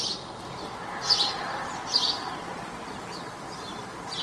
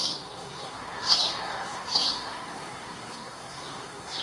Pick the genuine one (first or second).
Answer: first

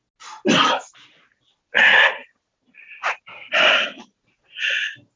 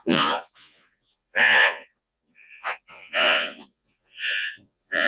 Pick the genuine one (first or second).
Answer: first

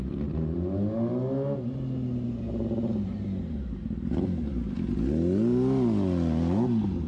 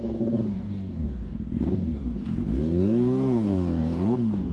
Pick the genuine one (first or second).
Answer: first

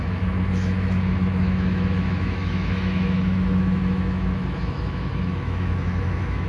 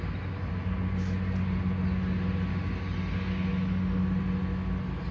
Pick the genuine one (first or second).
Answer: second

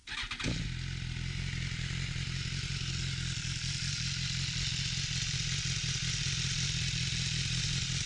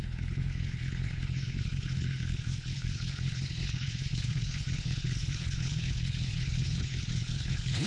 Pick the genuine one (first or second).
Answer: first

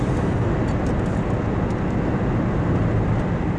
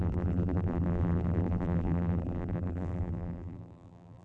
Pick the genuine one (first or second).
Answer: first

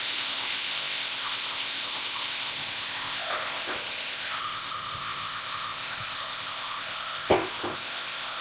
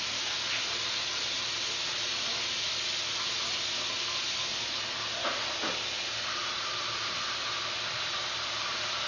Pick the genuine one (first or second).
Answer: second